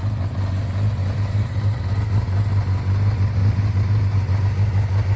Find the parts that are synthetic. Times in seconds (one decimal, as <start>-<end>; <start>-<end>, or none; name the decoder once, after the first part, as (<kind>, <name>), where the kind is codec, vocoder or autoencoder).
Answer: 0.0-0.5 (vocoder, BigVGAN v2); 1.0-1.8; 3.4-4.4